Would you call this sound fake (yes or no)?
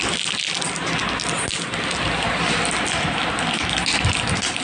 no